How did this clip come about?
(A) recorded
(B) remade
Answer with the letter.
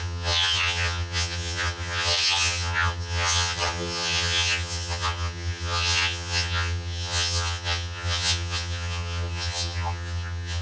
B